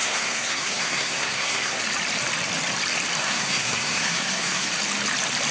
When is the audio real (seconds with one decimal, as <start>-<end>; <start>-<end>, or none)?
1.8-3.2; 4.7-5.5